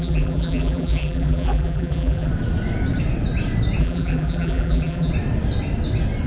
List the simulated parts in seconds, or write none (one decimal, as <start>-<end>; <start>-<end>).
0.0-2.3; 3.8-5.1